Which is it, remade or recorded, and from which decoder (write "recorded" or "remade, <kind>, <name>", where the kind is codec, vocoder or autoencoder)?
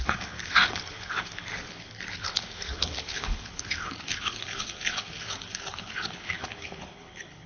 remade, codec, HILCodec